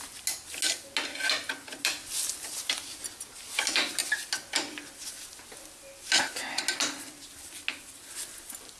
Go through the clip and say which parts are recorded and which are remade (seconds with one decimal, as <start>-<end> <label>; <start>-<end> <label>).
0.0-8.8 recorded